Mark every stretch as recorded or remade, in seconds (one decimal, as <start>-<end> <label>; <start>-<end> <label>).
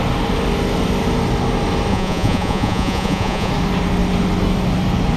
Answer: 0.0-1.9 recorded; 1.9-3.5 remade; 3.5-5.2 recorded